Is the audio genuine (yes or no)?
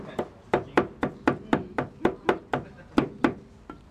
yes